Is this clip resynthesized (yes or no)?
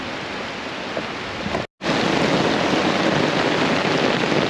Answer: no